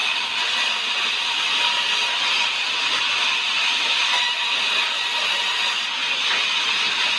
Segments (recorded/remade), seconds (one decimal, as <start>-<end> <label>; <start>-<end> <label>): 0.0-7.2 recorded